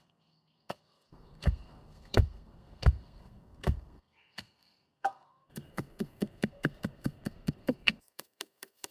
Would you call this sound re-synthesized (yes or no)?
yes